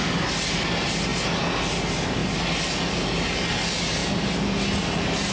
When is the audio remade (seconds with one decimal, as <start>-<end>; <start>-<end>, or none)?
none